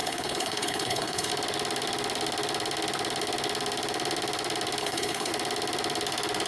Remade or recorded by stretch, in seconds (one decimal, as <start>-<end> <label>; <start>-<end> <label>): 0.0-1.3 remade; 1.3-4.8 recorded; 4.8-5.3 remade; 5.3-6.5 recorded